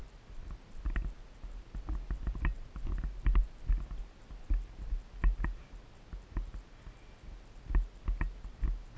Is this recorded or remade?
recorded